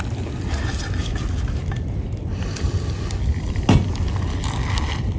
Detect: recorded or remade recorded